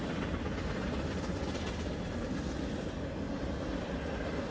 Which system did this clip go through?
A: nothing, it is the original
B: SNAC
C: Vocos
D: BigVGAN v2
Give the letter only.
A